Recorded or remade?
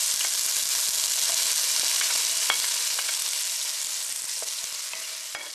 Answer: recorded